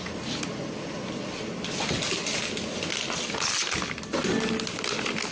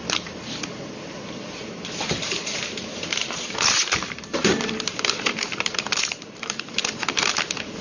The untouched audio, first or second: first